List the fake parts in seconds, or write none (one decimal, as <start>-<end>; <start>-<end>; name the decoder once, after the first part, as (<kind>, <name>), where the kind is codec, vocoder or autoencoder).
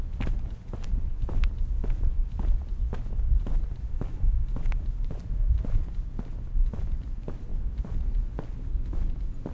none